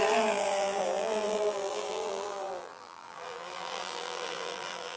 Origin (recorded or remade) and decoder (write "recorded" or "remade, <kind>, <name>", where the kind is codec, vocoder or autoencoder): remade, vocoder, BigVGAN v2